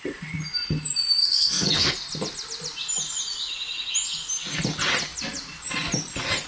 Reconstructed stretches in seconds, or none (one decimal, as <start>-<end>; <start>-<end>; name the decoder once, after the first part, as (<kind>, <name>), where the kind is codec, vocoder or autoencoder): 1.2-1.9 (codec, SNAC)